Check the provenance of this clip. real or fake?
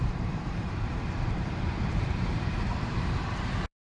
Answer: fake